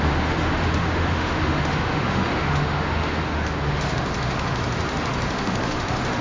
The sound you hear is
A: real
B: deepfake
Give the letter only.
B